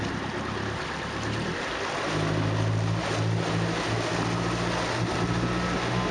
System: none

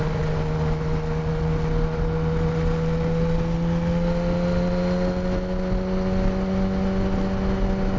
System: none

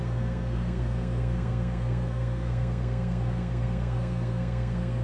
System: codec, SNAC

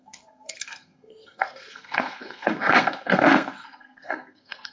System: codec, SNAC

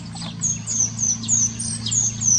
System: none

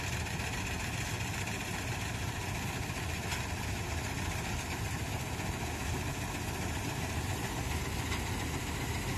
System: none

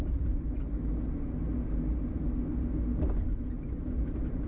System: none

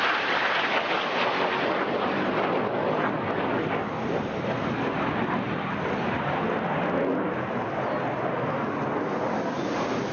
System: none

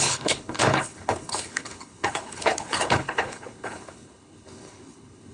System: codec, HILCodec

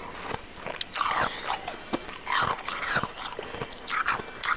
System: none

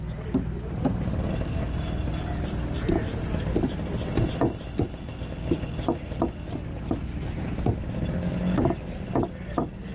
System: none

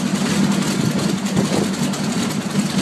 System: none